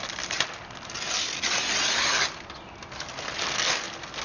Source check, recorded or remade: recorded